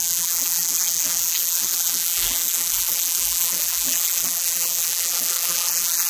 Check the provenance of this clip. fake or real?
fake